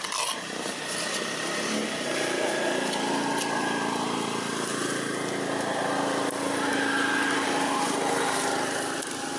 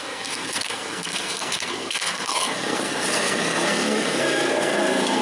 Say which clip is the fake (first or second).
second